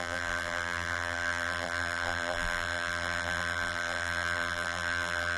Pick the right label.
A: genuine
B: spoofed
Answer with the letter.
B